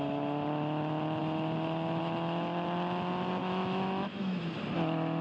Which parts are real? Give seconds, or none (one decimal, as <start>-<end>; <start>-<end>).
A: 0.0-3.4; 4.4-5.2